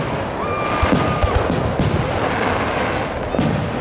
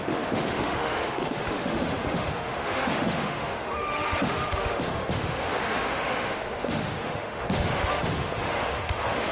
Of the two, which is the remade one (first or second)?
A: second